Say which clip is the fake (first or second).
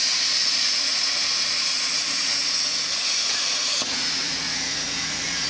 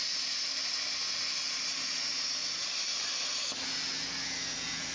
first